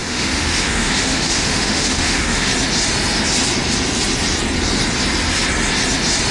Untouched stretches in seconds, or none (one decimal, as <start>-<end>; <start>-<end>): 2.5-6.3